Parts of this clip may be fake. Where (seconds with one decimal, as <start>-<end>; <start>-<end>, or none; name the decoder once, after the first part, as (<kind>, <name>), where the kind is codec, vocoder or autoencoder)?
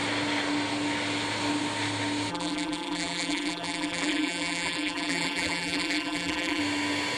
2.3-6.6 (vocoder, BigVGAN v2)